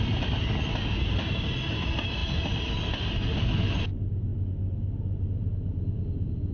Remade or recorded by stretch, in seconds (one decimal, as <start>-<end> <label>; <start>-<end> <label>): 0.0-6.5 recorded